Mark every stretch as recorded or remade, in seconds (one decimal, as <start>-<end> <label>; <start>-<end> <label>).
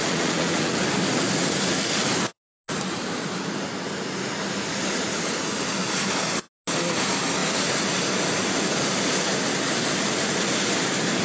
0.0-0.8 remade; 0.8-11.2 recorded